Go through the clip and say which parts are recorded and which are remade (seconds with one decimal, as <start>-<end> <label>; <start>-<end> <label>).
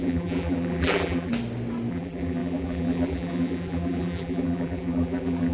0.0-1.3 remade; 1.3-1.9 recorded; 1.9-5.5 remade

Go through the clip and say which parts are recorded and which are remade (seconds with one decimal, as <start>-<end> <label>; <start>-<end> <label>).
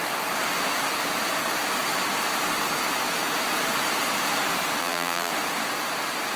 0.0-4.8 recorded; 4.8-5.3 remade; 5.3-6.4 recorded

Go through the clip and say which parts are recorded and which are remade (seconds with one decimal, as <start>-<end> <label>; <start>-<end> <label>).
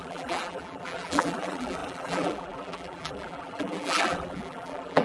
0.0-5.0 remade